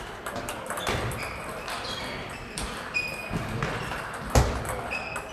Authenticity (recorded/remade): remade